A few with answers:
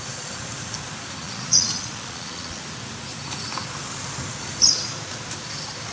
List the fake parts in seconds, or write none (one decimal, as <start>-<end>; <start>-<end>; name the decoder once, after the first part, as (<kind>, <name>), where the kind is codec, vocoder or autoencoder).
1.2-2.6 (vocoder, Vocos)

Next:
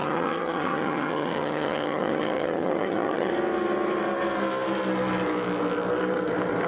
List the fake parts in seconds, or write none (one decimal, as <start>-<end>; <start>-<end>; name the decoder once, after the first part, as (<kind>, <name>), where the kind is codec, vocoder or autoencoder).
0.0-3.3 (vocoder, HiFi-GAN)

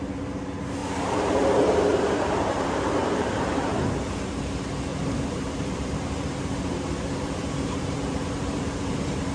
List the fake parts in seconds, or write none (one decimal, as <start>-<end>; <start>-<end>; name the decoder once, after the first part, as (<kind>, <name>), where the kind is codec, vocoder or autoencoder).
0.8-3.9 (vocoder, BigVGAN v2); 4.9-9.3

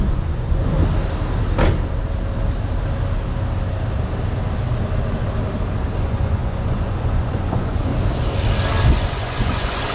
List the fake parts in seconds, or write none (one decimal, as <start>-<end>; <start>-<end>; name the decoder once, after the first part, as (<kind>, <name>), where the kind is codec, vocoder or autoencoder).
0.0-0.8 (vocoder, Vocos); 6.0-7.9; 8.9-9.9

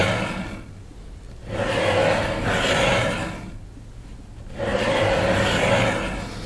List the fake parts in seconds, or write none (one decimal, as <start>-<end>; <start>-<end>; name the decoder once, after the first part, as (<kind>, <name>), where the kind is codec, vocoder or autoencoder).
none